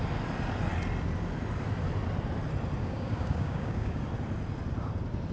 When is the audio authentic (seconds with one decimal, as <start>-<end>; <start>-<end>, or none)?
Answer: 0.0-2.8; 4.0-5.3